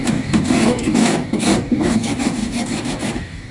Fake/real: fake